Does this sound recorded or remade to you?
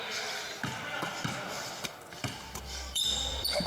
remade